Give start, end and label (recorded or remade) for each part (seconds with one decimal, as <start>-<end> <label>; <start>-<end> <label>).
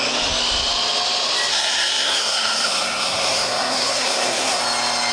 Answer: 0.0-1.5 recorded; 1.5-4.6 remade; 4.6-5.1 recorded